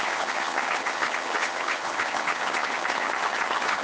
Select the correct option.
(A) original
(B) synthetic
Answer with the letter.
B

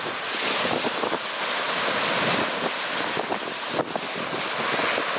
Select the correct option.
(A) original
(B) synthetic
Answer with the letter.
A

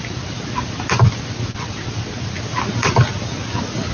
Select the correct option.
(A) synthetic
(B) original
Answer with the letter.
B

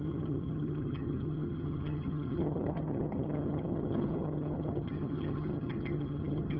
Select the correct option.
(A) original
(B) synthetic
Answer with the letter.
B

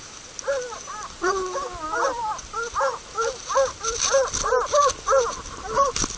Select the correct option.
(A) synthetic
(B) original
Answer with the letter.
B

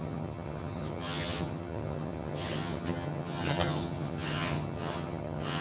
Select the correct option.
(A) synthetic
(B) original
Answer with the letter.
A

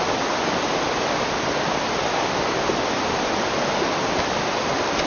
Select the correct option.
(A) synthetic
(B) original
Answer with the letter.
B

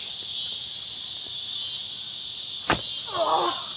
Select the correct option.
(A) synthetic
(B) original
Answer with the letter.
B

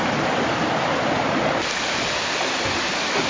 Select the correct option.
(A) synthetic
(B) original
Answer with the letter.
B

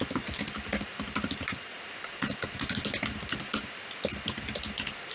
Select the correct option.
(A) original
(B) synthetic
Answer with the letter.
A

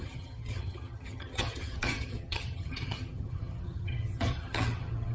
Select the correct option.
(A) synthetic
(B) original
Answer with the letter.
A